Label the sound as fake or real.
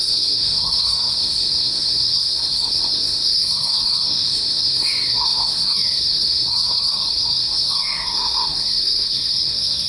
fake